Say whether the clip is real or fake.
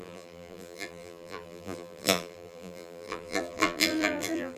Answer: fake